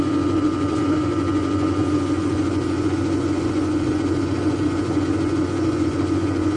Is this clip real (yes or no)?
no